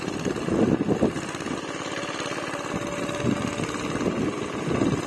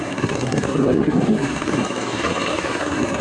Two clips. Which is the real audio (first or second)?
first